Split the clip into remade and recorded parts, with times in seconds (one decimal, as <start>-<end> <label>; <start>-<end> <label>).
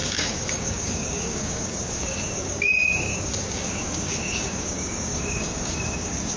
0.0-6.4 remade